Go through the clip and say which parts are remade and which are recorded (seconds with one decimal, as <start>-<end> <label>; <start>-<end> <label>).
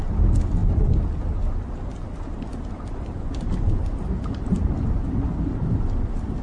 0.0-6.4 recorded